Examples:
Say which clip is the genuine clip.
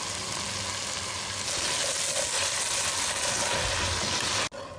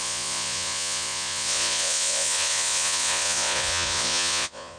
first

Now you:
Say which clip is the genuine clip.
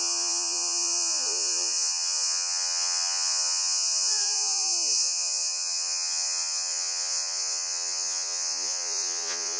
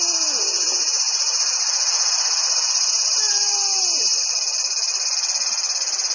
second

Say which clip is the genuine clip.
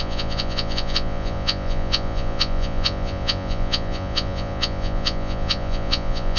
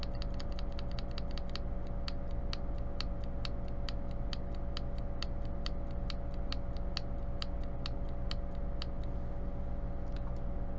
second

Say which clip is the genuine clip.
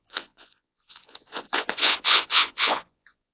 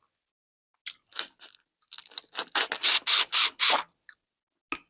second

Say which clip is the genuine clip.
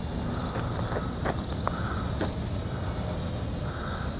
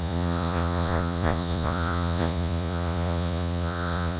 first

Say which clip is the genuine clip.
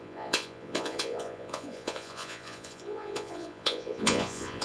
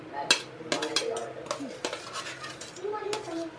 second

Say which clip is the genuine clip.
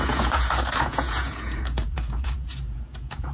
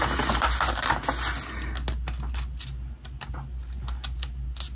second